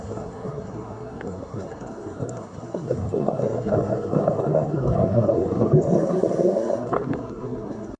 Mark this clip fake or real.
fake